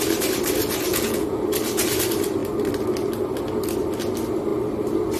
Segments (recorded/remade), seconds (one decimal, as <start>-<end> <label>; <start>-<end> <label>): 0.0-0.9 recorded; 0.9-1.4 remade; 1.4-5.2 recorded